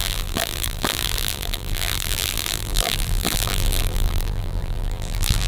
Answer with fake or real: fake